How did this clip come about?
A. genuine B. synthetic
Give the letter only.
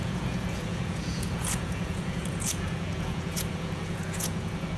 B